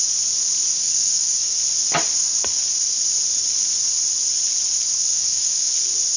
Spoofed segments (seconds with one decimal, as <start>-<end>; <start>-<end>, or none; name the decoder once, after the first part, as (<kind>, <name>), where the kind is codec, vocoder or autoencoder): 0.7-1.6 (codec, DAC); 5.1-5.7